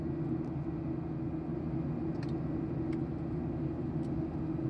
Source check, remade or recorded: recorded